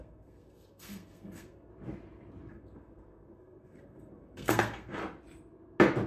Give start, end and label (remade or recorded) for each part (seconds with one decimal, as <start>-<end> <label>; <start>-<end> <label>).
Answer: 0.0-1.7 remade; 1.7-2.5 recorded; 2.5-5.0 remade; 5.0-6.1 recorded

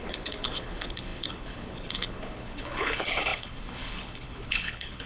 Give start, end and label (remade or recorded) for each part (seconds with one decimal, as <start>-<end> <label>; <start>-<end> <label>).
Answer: 0.0-5.1 remade

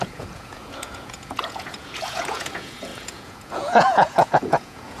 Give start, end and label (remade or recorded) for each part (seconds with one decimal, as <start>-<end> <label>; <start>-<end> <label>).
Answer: 0.0-5.0 remade